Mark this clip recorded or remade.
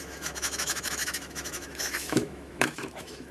remade